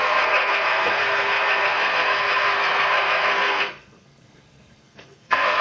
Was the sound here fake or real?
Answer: fake